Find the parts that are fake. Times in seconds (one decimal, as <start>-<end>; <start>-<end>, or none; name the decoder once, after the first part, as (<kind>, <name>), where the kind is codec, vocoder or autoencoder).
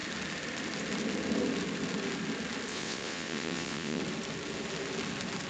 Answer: 2.7-4.0 (vocoder, WaveNeXt)